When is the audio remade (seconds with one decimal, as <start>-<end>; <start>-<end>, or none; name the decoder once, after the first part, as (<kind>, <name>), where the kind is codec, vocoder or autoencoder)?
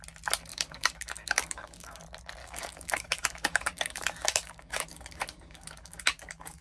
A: 0.5-2.0 (codec, DAC); 2.4-6.6